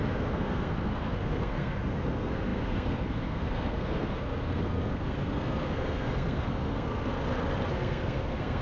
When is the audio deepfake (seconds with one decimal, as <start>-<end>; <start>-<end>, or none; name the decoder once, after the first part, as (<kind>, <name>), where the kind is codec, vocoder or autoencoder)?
0.0-7.1 (codec, SNAC); 7.7-8.6